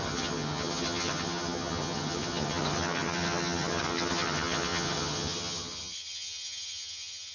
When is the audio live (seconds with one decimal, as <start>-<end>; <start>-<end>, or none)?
none